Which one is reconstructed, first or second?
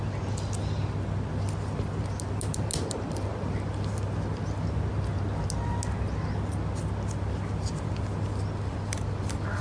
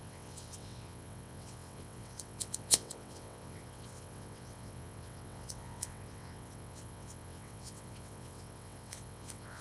second